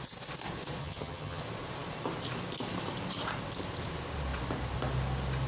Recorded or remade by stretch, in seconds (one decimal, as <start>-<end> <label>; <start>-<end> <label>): 0.0-0.8 recorded; 0.8-1.4 remade; 1.4-5.5 recorded